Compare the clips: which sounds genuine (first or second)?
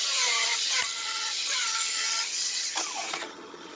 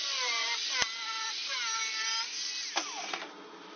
second